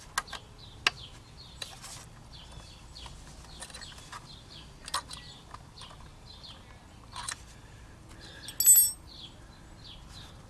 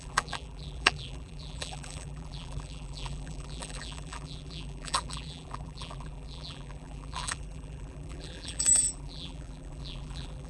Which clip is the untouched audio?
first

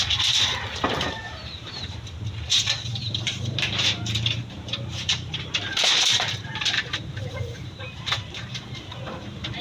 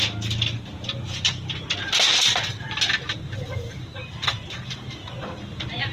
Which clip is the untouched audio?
second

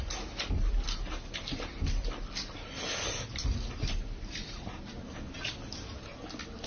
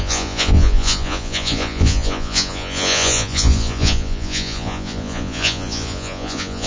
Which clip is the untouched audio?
first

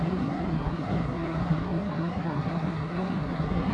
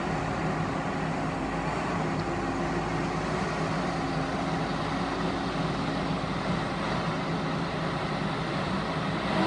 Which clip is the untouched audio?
second